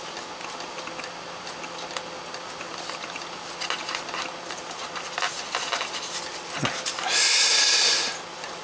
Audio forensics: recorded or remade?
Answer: recorded